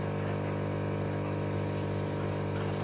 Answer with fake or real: real